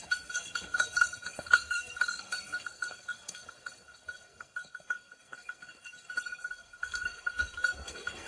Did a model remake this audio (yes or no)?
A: yes